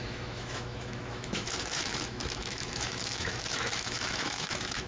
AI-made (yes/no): yes